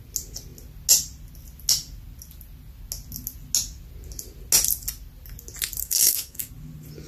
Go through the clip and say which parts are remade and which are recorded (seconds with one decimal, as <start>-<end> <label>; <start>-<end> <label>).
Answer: 0.0-5.8 recorded; 5.8-6.5 remade; 6.5-7.1 recorded